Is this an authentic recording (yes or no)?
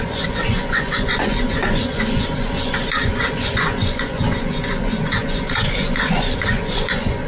no